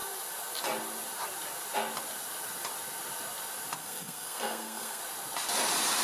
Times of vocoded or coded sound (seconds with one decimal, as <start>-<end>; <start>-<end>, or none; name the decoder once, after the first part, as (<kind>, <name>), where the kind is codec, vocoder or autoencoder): 3.8-5.0 (codec, SNAC)